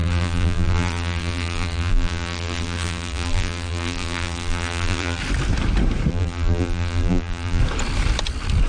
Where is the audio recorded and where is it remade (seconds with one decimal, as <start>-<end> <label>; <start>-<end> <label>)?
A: 0.0-5.2 remade; 5.2-6.1 recorded; 6.1-7.6 remade; 7.6-8.7 recorded